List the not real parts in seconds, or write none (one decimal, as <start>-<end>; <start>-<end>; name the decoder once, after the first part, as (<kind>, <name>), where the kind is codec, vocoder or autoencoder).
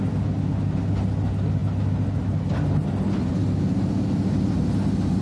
none